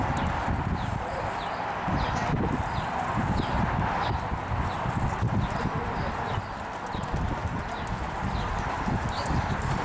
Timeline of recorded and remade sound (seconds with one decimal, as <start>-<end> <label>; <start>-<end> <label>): 0.0-7.4 recorded; 7.4-9.8 remade